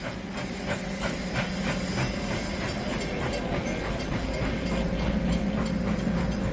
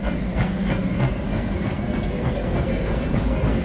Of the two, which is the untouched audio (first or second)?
first